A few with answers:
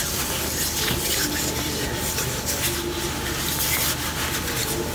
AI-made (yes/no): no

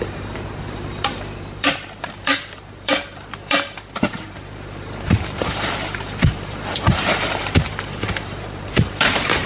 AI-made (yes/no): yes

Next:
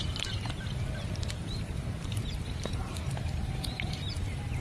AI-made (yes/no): yes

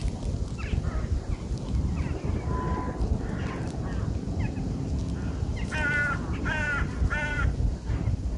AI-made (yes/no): no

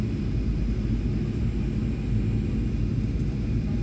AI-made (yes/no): no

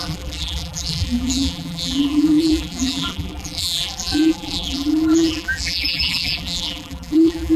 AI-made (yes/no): yes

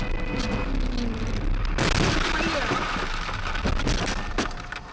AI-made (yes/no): no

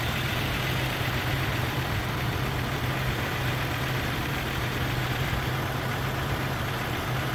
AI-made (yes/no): yes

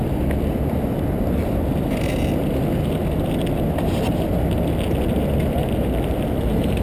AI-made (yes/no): no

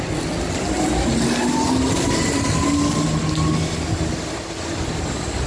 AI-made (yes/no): no